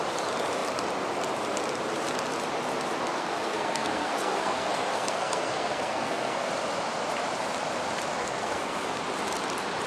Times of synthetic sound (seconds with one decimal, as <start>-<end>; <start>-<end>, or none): 3.1-6.5; 8.1-9.0